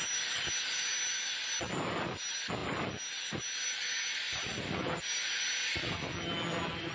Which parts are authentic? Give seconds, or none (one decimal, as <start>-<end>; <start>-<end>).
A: 0.0-6.9

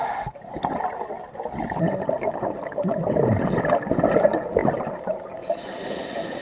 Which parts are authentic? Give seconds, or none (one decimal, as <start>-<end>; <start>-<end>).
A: 0.0-6.4

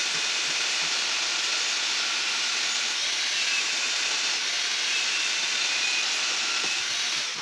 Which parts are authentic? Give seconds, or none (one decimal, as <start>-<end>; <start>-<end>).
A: 0.0-4.7; 6.7-7.4

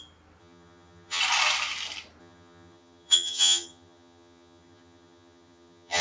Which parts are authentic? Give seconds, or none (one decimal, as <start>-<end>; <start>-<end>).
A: 0.0-0.4; 1.2-2.2

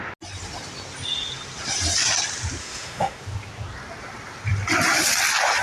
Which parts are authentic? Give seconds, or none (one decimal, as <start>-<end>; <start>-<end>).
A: 0.0-2.6; 3.2-5.6